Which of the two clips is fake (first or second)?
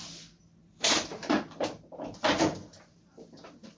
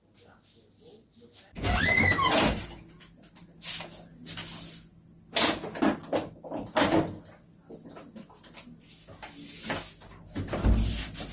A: first